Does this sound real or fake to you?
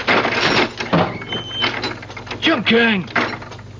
real